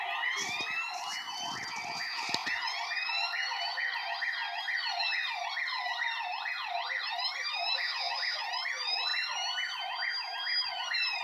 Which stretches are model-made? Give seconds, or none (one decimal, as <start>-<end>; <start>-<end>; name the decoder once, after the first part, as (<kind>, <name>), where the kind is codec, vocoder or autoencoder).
none